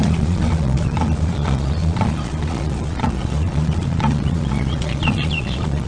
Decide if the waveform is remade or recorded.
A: remade